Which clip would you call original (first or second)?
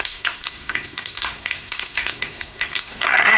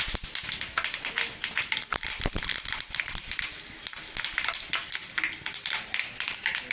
second